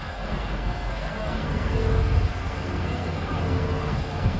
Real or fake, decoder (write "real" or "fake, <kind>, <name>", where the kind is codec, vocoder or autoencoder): fake, codec, SNAC